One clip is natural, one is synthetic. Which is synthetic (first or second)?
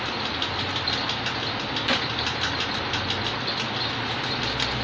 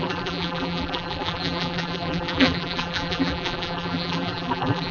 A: second